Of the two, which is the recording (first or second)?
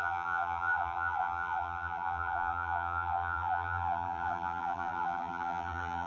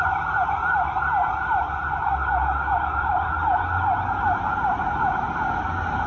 second